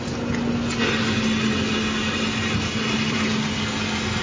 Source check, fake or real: real